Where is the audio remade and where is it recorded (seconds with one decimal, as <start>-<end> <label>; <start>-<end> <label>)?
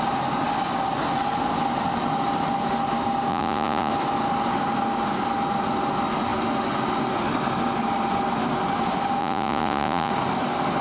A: 0.0-3.3 recorded; 3.3-3.9 remade; 3.9-9.2 recorded; 9.2-10.1 remade; 10.1-10.8 recorded